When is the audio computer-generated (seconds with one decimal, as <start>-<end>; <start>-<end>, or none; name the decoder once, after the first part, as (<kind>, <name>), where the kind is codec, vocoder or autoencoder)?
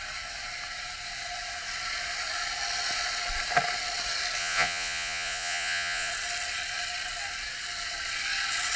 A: 4.4-6.1 (vocoder, Vocos)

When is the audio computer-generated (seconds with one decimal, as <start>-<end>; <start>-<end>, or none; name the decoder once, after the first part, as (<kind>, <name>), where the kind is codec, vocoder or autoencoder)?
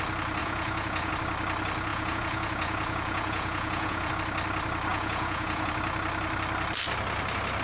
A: 0.4-1.1 (vocoder, Vocos); 1.9-4.1; 4.9-5.7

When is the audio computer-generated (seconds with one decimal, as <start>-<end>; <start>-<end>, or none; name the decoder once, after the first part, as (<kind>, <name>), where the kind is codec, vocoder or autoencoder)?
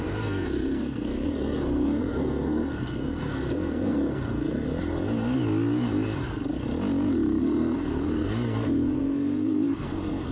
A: 0.0-4.7 (codec, SNAC); 7.4-10.3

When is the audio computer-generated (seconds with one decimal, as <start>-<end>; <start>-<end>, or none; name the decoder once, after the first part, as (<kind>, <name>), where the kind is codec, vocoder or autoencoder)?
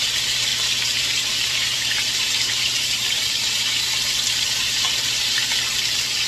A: 0.0-5.4 (vocoder, BigVGAN v2)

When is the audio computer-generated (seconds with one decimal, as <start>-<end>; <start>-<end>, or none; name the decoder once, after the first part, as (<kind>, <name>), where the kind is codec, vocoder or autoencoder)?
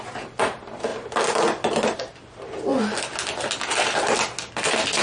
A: none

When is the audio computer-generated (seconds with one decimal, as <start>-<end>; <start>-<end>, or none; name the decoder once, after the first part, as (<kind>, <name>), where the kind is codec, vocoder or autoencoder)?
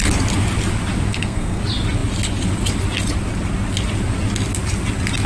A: 1.1-1.6 (codec, SNAC)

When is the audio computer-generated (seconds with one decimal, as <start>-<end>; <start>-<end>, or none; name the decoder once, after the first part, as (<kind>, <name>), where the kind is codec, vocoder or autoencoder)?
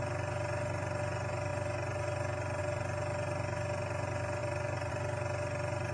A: 4.4-4.9 (vocoder, BigVGAN v2)